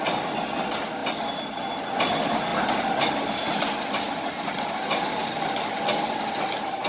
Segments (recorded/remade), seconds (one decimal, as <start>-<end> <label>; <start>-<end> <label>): 0.0-6.9 recorded